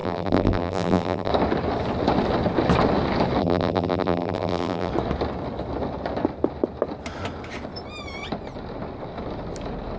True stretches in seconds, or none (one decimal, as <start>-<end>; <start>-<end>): 1.3-3.4; 4.9-10.0